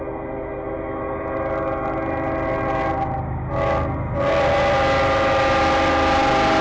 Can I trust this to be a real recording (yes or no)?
yes